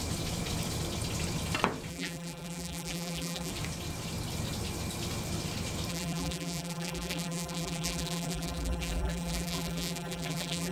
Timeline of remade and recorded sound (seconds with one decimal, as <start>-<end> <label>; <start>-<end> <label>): 0.0-1.9 recorded; 1.9-3.5 remade; 3.5-5.9 recorded; 5.9-10.7 remade